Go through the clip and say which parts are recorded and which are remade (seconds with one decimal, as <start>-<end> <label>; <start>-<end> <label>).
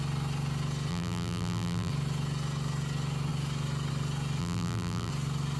0.0-0.9 recorded; 0.9-1.9 remade; 1.9-4.4 recorded; 4.4-5.1 remade; 5.1-5.6 recorded